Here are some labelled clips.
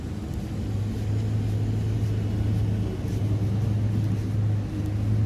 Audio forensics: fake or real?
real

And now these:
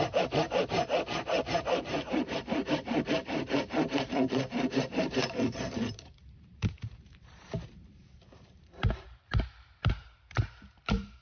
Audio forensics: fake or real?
fake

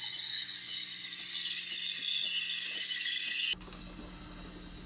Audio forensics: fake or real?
real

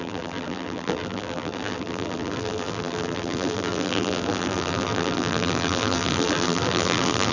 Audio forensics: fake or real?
fake